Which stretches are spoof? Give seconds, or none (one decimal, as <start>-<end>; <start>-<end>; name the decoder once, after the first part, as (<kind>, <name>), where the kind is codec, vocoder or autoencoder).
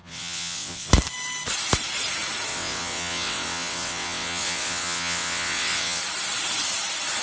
0.0-0.9 (vocoder, WaveNeXt); 2.5-6.0